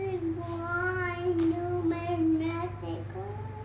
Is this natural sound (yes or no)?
yes